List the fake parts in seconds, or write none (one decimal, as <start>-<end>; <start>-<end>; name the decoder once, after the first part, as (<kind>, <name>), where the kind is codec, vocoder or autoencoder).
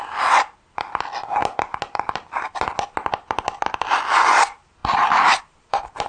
none